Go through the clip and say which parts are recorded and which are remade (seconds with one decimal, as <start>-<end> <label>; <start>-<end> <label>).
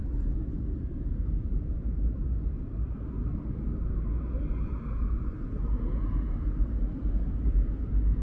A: 0.0-0.5 recorded; 0.5-8.2 remade